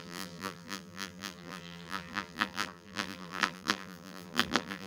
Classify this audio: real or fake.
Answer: fake